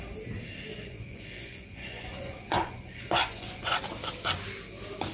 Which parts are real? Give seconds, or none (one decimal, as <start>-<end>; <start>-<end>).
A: 0.0-0.7; 3.8-5.1